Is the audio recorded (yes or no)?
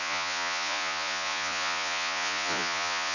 no